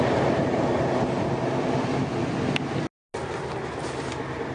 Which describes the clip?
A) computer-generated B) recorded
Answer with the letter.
B